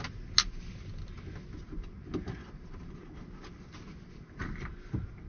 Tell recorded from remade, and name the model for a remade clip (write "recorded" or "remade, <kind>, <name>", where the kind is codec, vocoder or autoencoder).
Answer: recorded